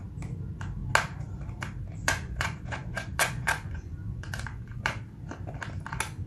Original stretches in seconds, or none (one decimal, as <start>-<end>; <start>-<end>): 0.0-2.0; 5.0-6.3